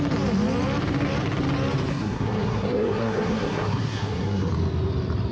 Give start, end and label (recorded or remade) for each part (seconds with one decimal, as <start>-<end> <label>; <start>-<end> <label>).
0.0-1.9 recorded; 1.9-4.5 remade; 4.5-5.3 recorded